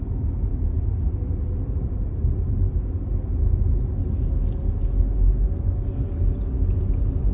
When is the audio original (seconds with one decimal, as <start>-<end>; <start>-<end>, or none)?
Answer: 0.0-7.3